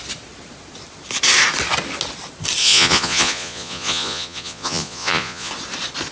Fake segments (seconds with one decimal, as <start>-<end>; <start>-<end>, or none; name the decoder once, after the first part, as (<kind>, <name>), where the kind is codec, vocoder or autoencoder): 2.6-5.5 (vocoder, Vocos)